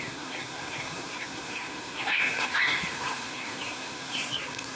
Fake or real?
fake